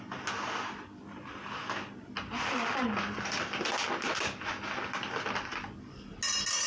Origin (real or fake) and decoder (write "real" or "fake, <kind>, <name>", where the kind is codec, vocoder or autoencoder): real